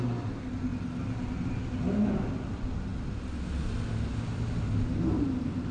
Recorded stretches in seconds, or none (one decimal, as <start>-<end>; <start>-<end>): 0.0-5.7